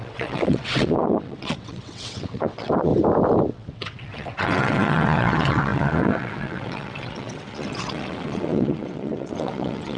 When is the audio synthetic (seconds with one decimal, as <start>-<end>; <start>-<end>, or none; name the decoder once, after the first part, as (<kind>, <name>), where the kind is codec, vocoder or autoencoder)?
0.0-2.9 (vocoder, WaveNeXt); 3.5-10.0